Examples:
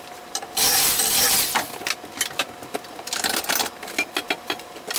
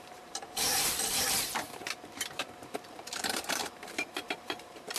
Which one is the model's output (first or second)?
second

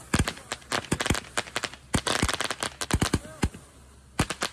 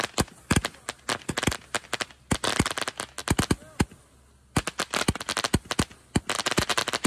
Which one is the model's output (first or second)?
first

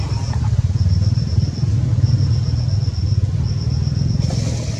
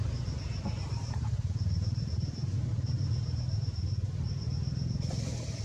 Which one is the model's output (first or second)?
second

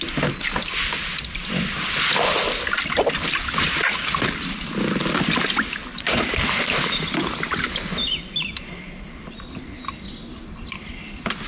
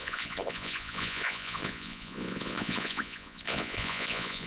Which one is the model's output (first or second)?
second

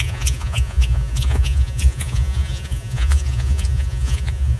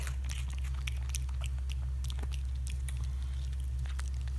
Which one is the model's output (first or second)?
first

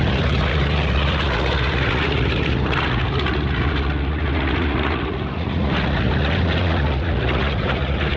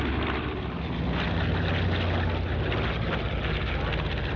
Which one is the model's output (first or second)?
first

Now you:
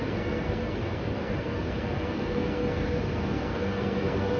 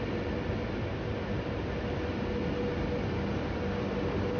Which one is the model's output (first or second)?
first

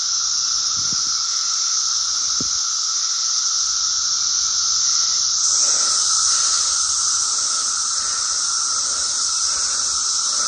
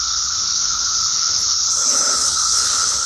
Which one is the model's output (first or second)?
second